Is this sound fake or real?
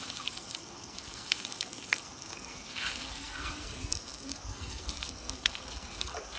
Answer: fake